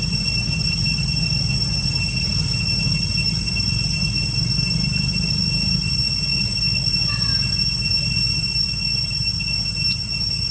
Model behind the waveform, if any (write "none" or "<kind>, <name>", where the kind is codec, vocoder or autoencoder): none